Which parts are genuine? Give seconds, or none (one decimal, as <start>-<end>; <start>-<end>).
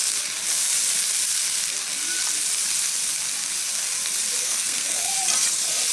0.0-4.4; 5.1-5.9